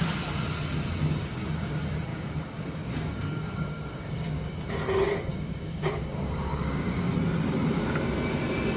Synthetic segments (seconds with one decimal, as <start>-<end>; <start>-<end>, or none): 2.1-4.6; 5.3-7.1